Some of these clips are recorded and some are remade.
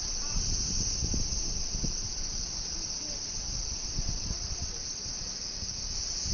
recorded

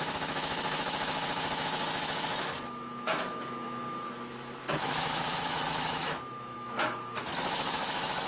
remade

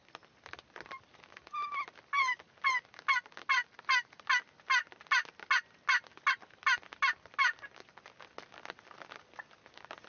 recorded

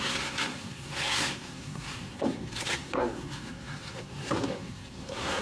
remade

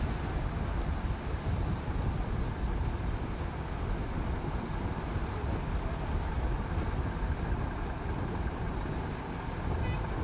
recorded